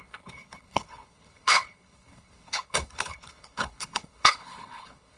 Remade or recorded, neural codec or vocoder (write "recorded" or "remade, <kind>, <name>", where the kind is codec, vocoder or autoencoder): remade, codec, HILCodec